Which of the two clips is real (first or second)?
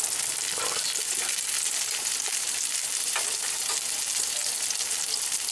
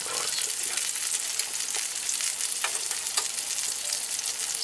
second